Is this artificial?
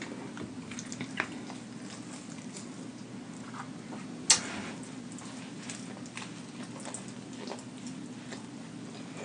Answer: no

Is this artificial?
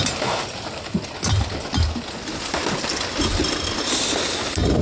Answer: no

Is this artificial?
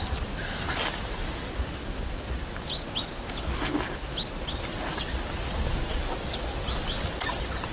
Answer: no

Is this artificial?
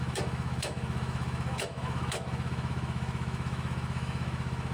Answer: yes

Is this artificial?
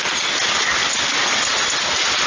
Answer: no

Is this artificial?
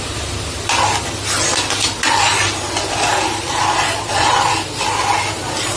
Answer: no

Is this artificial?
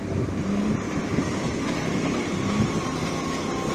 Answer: no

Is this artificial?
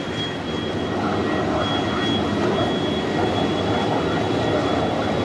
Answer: no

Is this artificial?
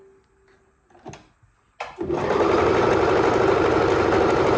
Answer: no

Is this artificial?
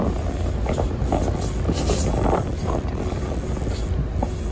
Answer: no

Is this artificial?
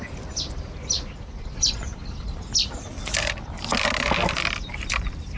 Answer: no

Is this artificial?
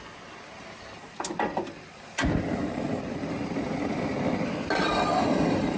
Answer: no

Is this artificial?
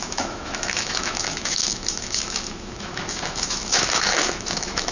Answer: yes